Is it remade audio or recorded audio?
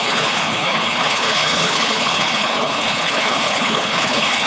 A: remade